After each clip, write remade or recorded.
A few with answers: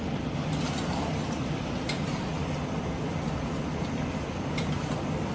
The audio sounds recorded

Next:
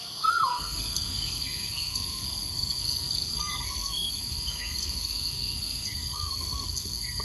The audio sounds remade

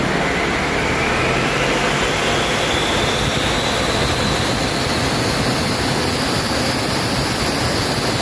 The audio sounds recorded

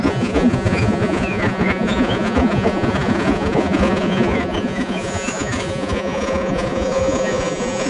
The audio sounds remade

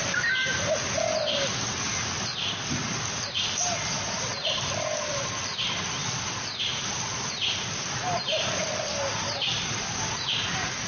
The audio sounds recorded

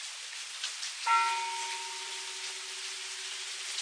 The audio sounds recorded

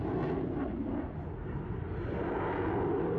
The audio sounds recorded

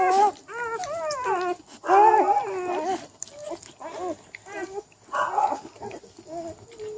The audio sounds recorded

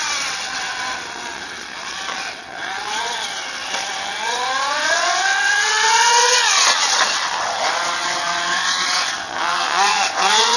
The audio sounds remade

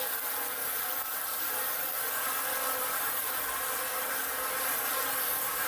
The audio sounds recorded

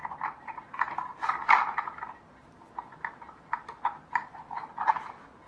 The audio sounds recorded